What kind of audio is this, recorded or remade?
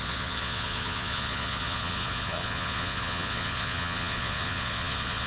remade